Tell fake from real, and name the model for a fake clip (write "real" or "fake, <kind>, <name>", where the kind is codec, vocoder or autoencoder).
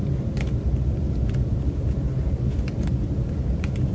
real